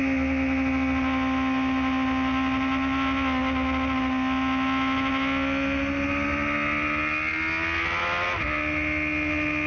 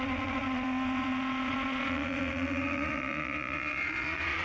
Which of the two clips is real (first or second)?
first